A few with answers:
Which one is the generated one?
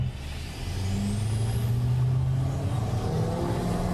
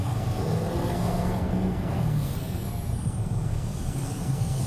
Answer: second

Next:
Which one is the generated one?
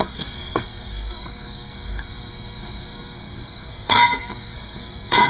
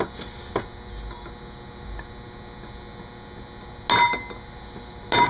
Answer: first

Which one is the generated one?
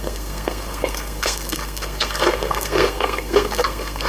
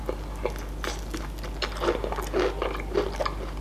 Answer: first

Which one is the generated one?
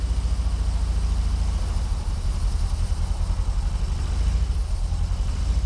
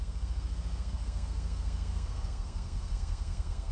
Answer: second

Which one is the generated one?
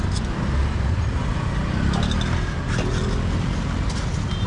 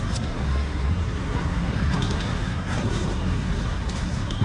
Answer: second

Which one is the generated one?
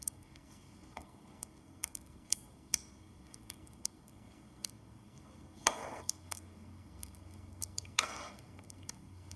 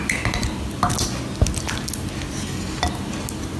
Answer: first